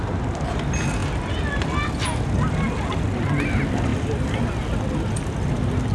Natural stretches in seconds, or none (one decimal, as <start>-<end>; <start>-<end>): 0.0-5.9